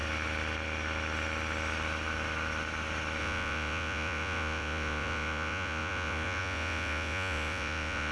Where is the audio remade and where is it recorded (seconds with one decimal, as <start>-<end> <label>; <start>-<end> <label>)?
0.0-3.2 recorded; 3.2-8.1 remade